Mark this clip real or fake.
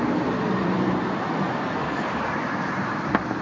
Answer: fake